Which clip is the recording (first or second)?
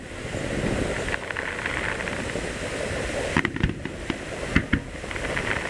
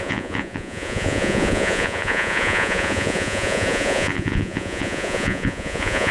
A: first